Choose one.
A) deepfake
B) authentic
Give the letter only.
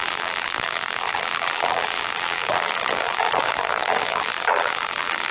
A